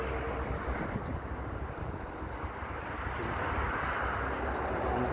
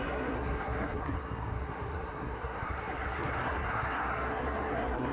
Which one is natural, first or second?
first